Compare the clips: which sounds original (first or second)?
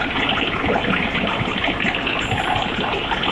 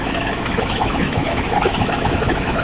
first